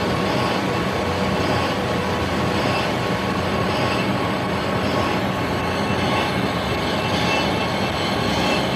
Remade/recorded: recorded